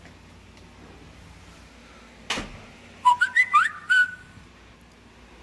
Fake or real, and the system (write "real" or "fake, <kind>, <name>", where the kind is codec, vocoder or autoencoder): real